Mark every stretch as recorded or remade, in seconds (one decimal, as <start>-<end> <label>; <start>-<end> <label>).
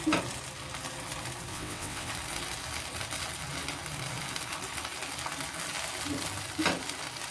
0.0-1.5 recorded; 1.5-2.1 remade; 2.1-7.3 recorded